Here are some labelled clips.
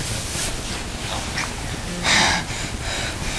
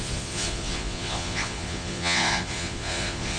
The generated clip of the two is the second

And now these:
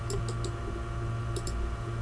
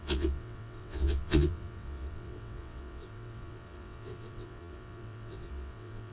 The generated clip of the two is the second